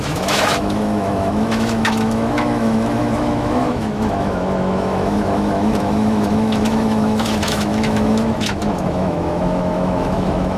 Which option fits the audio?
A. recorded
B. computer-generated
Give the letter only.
B